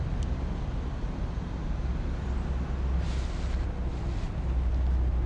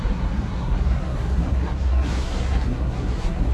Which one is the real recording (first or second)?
first